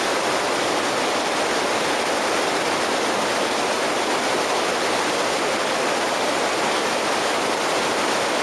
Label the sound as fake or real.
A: real